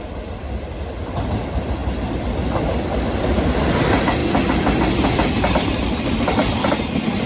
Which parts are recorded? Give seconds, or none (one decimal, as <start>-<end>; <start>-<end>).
none